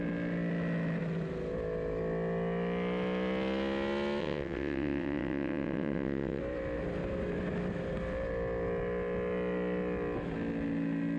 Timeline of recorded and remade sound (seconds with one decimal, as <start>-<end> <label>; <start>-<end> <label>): 0.0-4.2 recorded; 4.2-6.4 remade; 6.4-11.2 recorded